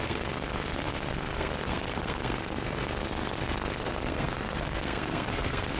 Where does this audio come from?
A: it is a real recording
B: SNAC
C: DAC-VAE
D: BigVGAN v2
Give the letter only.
B